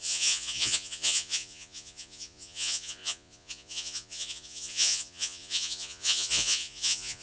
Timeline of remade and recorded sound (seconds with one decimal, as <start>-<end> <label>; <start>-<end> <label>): 0.0-7.2 remade